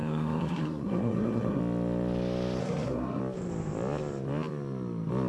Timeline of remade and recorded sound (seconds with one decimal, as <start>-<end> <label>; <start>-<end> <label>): 0.0-1.6 remade; 1.6-2.6 recorded; 2.6-3.2 remade; 3.2-5.3 recorded